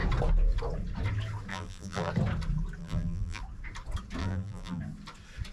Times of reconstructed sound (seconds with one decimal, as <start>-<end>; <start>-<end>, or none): 1.5-2.1; 2.8-3.4; 4.2-4.8